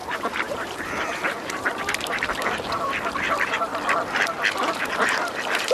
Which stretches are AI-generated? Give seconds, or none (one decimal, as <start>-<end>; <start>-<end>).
0.0-3.7; 4.8-5.7